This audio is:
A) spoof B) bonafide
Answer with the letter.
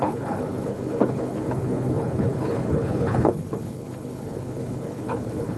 A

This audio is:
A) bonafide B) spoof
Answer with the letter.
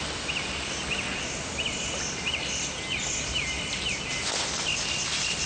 A